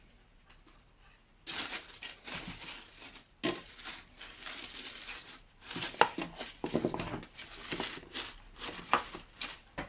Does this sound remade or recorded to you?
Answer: recorded